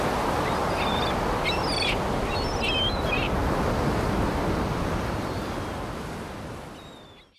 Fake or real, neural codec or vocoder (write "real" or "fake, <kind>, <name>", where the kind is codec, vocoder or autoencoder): real